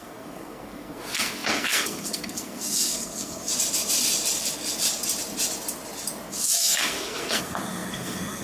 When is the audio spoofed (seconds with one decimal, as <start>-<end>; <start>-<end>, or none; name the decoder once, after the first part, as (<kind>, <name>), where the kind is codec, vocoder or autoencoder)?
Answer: 0.0-3.5 (codec, SNAC); 6.3-8.4